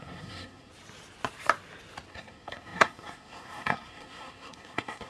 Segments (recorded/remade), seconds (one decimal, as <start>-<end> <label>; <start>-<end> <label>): 0.0-0.7 remade; 0.7-2.1 recorded; 2.1-5.1 remade